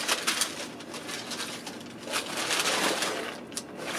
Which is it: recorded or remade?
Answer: recorded